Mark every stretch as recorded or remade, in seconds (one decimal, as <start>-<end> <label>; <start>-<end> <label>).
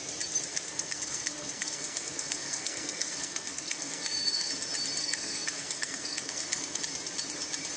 0.0-0.5 recorded; 0.5-4.5 remade; 4.5-5.0 recorded; 5.0-6.8 remade; 6.8-7.8 recorded